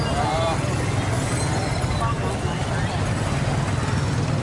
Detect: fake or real real